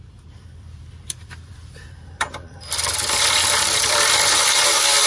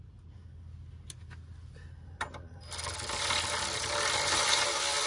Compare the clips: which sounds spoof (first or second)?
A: first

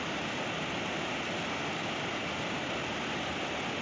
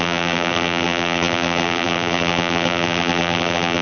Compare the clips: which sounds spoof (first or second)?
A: second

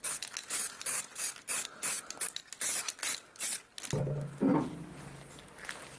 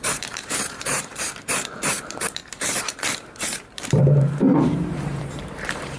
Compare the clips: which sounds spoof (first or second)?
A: second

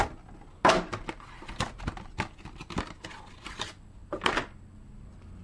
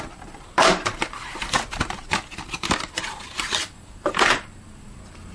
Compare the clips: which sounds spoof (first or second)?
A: second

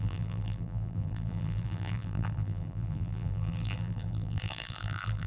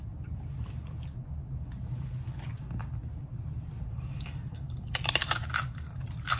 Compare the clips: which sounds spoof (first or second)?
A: first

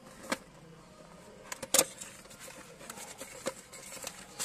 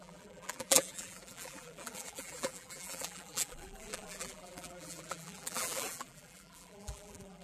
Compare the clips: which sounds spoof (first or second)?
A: second